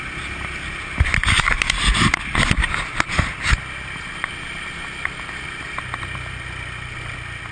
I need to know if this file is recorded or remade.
recorded